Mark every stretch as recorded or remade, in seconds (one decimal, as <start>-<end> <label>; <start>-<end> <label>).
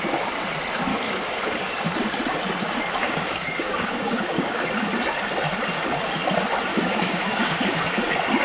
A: 0.0-0.9 recorded; 0.9-1.6 remade; 1.6-3.0 recorded; 3.0-4.6 remade; 4.6-6.7 recorded; 6.7-7.8 remade; 7.8-8.4 recorded